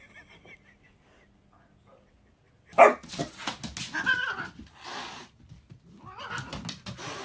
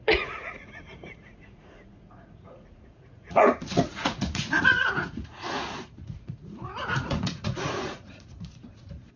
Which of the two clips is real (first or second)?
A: first